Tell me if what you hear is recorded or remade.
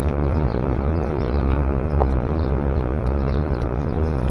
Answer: remade